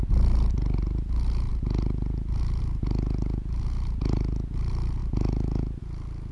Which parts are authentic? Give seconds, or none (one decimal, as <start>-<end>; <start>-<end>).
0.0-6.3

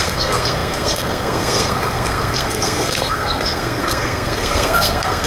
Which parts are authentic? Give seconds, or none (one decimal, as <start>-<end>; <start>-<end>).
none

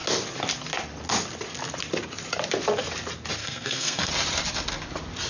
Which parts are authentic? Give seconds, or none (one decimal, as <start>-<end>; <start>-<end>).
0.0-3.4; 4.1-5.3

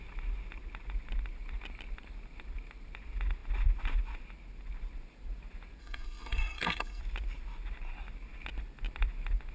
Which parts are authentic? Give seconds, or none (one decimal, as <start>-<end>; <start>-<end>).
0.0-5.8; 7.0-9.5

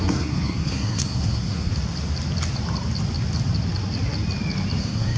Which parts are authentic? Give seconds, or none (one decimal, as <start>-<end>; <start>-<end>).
1.7-4.8

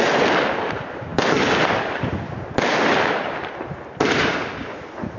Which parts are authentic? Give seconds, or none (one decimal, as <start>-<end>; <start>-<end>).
0.0-5.2

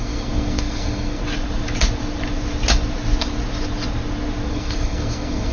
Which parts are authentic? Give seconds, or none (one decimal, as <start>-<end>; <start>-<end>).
1.2-4.5

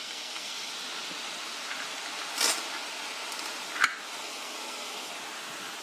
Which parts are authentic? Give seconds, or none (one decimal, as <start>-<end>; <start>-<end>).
0.7-4.2; 5.1-5.8